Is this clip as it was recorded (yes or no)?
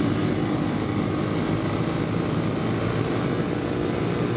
yes